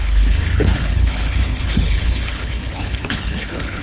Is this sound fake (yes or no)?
yes